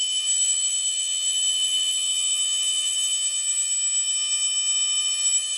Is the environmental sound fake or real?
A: fake